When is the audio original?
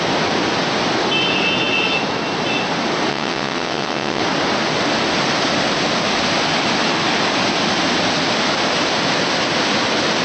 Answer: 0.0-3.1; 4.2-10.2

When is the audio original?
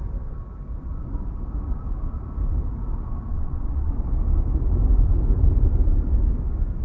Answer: 0.0-3.3; 3.9-6.8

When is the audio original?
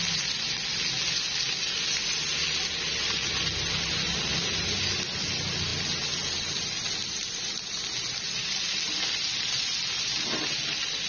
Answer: 0.0-11.1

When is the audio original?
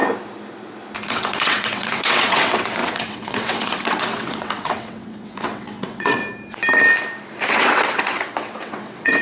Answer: 0.0-1.1; 6.2-7.5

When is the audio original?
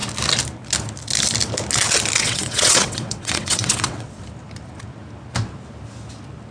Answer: 0.0-2.2; 4.2-6.5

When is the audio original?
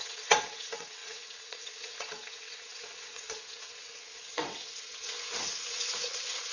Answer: none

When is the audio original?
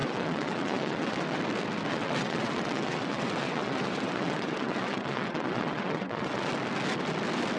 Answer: 1.4-1.9; 6.5-7.6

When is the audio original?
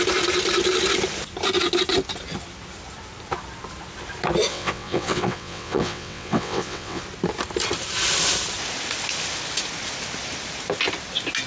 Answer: 0.0-4.5; 7.0-11.5